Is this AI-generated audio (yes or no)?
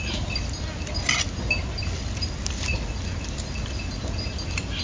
no